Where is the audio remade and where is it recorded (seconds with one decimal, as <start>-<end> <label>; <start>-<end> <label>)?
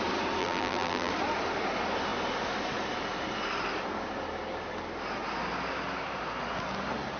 0.0-0.4 recorded; 0.4-1.1 remade; 1.1-7.2 recorded